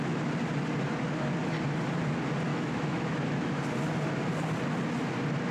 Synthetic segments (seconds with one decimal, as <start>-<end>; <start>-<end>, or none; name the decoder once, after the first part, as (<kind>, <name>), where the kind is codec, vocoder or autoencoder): 2.5-3.6 (autoencoder, DAC-VAE)